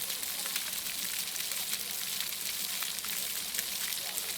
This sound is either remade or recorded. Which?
recorded